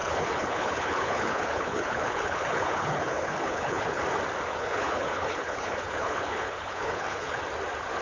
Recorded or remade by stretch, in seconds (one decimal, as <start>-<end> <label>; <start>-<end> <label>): 0.0-4.0 remade; 4.0-4.5 recorded; 4.5-7.4 remade; 7.4-8.0 recorded